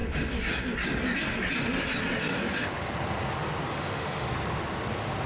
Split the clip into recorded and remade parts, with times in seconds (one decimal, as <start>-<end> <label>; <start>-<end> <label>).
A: 0.0-3.7 recorded; 3.7-4.3 remade; 4.3-5.3 recorded